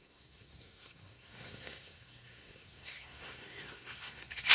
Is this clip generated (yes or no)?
yes